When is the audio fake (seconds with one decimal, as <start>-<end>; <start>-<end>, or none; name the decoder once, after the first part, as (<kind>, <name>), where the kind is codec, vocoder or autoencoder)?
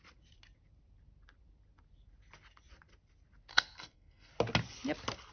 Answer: 3.5-4.3 (codec, SNAC)